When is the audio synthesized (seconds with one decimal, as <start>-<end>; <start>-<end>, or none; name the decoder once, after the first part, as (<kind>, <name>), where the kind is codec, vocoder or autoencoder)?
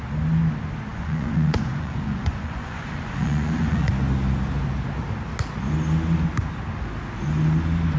0.9-3.9 (vocoder, Vocos)